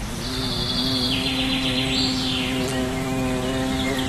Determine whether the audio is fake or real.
real